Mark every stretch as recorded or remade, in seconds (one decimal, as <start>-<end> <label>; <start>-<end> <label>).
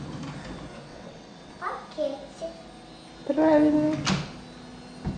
0.0-0.9 recorded; 0.9-1.5 remade; 1.5-5.2 recorded